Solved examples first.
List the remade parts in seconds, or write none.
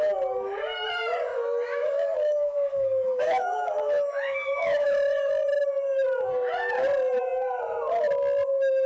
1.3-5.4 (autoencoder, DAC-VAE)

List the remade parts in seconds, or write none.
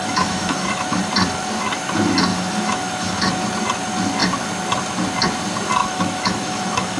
0.0-1.0 (autoencoder, DAC-VAE); 2.3-3.3; 5.8-7.0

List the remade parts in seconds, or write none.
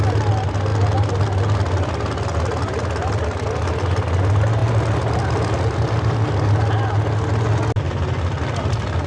none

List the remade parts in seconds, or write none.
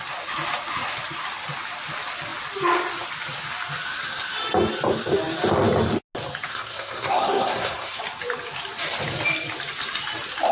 6.5-8.0 (codec, SNAC)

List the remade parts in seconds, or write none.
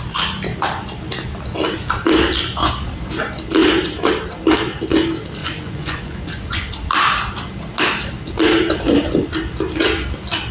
5.4-6.7 (vocoder, Vocos)